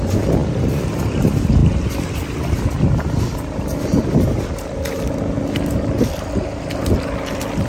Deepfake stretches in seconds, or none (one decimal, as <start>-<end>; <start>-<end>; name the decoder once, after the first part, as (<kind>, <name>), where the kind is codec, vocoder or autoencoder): none